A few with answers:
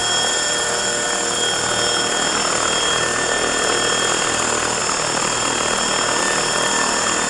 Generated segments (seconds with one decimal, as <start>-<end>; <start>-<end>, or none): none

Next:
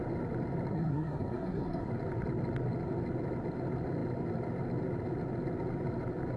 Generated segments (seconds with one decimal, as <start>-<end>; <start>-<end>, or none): 0.7-1.9

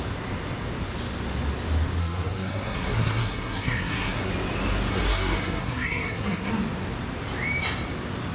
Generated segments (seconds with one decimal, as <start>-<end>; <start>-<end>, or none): 2.0-4.3; 4.9-6.5